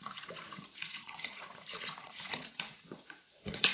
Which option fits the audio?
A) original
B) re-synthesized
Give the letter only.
B